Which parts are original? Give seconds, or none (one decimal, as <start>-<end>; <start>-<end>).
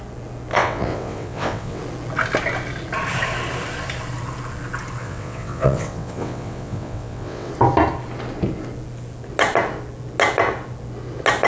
0.0-0.5; 1.8-5.0; 7.5-11.5